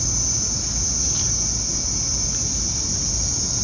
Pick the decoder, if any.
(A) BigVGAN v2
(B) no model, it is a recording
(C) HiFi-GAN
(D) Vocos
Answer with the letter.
B